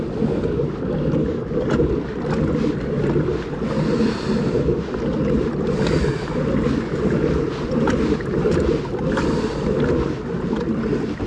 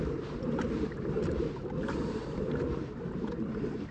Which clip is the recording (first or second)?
first